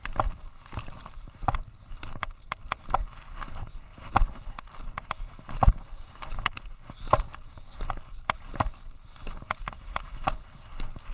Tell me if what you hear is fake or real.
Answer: real